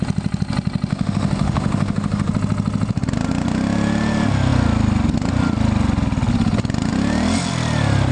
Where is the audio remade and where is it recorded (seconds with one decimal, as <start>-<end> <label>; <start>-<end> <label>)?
0.0-0.9 recorded; 0.9-2.3 remade; 2.3-8.1 recorded